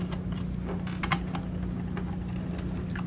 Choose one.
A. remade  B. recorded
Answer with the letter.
B